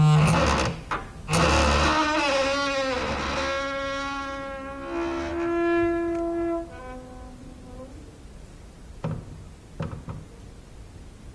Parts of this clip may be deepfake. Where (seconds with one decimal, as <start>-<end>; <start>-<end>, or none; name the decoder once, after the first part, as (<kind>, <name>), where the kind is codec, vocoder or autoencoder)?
none